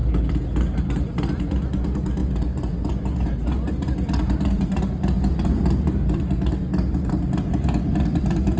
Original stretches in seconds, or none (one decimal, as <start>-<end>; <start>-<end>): 0.0-8.6